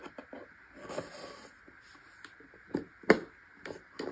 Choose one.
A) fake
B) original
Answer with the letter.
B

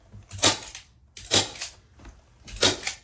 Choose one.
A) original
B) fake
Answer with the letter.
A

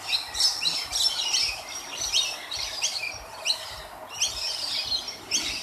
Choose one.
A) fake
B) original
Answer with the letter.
B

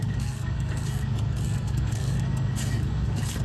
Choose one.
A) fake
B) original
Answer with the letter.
A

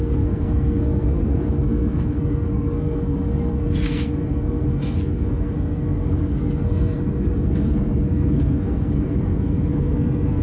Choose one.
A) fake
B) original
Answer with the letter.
A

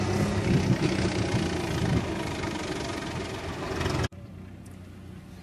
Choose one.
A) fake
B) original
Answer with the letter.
B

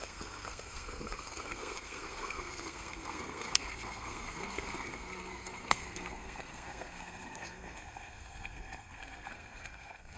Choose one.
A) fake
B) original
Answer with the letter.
A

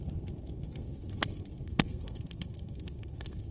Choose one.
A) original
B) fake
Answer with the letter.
B